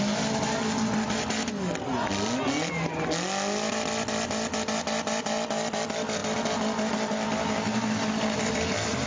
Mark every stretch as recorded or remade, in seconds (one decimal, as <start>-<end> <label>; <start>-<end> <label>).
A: 0.0-9.1 recorded